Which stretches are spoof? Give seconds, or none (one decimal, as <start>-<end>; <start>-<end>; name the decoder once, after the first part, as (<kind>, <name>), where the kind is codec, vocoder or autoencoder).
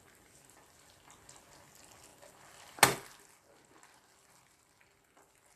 none